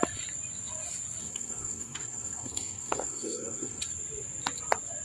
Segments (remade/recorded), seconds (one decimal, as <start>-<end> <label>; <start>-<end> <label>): 0.0-1.2 recorded; 1.2-3.8 remade; 3.8-5.0 recorded